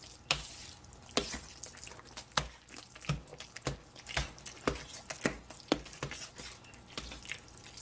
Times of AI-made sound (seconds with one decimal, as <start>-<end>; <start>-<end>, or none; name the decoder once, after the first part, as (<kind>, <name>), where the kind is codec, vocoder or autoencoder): none